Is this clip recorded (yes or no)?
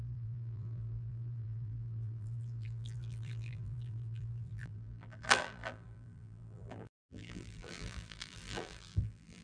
no